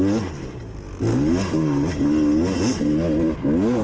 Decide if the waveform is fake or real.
real